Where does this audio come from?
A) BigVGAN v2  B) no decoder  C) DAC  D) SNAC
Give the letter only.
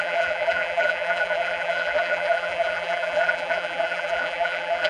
A